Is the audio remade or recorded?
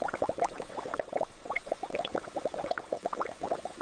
remade